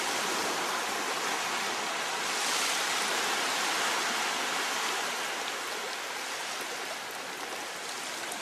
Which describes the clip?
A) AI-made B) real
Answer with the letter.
B